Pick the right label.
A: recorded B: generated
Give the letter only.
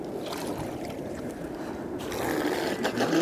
A